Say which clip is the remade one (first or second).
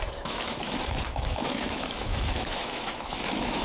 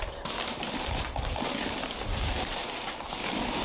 first